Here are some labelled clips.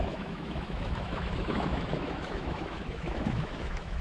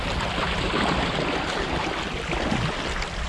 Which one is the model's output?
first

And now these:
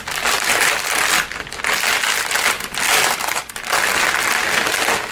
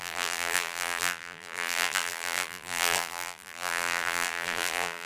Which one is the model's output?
second